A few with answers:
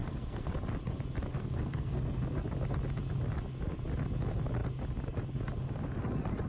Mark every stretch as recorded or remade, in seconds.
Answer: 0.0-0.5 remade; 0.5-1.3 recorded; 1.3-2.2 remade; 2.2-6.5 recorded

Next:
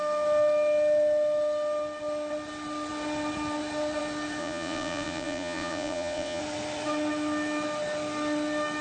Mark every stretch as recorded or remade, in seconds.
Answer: 0.0-4.4 recorded; 4.4-6.4 remade; 6.4-8.8 recorded

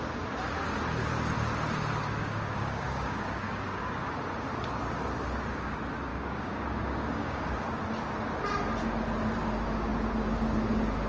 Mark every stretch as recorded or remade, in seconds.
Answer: 0.0-2.2 recorded; 2.2-4.1 remade; 4.1-6.1 recorded; 6.1-7.5 remade; 7.5-11.1 recorded

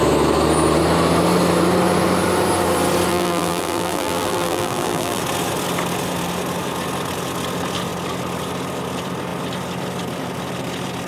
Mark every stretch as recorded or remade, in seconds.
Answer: 0.0-3.1 recorded; 3.1-5.2 remade; 5.2-11.1 recorded

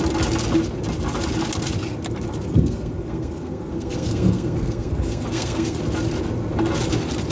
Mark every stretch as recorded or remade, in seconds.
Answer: 0.0-2.5 recorded; 2.5-5.8 remade; 5.8-7.3 recorded

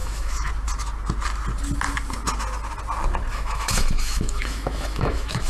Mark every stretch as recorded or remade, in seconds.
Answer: 0.0-0.5 remade; 0.5-3.3 recorded; 3.3-5.5 remade

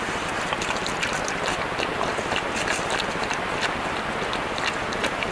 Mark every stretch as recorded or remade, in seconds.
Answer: 0.0-5.3 recorded

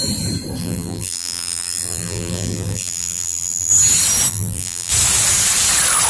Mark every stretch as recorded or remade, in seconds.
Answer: 0.0-0.6 recorded; 0.6-3.7 remade; 3.7-4.3 recorded; 4.3-4.9 remade; 4.9-6.1 recorded